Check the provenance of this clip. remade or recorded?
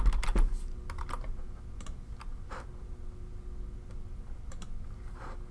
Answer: recorded